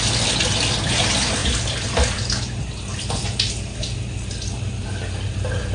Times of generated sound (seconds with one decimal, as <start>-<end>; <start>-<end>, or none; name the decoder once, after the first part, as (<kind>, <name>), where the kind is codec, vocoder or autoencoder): none

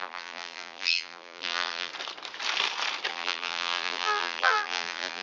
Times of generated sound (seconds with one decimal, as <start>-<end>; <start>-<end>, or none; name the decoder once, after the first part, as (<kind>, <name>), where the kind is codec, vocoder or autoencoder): 0.0-1.9 (vocoder, BigVGAN v2); 3.1-5.2

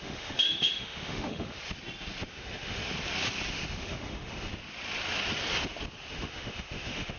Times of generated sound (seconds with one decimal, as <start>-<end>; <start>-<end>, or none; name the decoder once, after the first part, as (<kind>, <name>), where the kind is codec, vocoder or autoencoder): 0.0-1.6 (autoencoder, DAC-VAE); 2.3-2.8; 3.5-4.5; 6.1-7.2